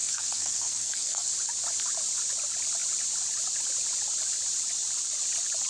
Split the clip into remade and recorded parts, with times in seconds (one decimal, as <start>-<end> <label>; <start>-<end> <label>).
0.0-1.3 remade; 1.3-5.7 recorded